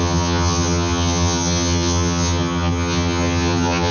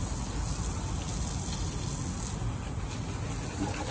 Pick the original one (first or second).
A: second